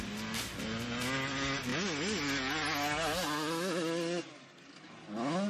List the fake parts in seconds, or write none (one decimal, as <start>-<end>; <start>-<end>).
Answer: none